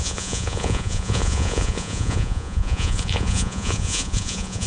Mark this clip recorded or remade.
remade